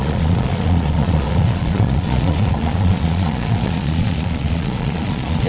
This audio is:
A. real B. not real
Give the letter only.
B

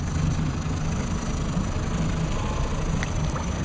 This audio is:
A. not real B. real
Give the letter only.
B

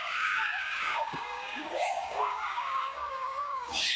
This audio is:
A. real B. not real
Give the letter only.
B